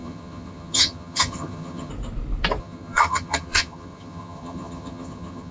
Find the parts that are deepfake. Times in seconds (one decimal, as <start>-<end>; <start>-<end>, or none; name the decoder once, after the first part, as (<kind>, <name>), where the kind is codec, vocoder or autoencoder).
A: 0.0-1.9 (vocoder, HiFi-GAN); 2.6-5.5